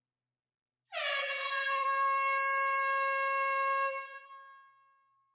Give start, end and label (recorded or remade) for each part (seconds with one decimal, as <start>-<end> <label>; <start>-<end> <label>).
0.0-1.2 recorded; 1.2-4.3 remade; 4.3-5.3 recorded